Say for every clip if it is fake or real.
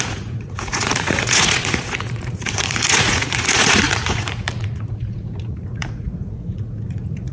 fake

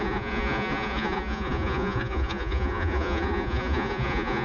fake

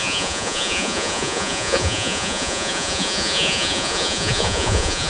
fake